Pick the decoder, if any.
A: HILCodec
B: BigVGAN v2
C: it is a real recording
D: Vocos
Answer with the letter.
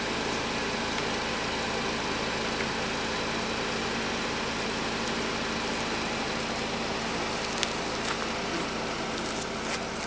C